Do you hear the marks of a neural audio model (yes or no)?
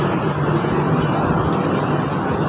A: no